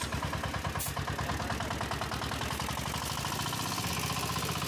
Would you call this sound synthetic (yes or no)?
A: no